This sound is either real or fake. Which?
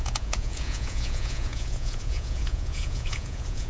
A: fake